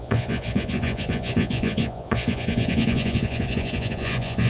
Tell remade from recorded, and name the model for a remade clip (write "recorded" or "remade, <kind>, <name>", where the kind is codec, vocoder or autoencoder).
remade, vocoder, Vocos